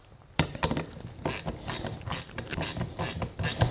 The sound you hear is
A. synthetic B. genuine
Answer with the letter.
B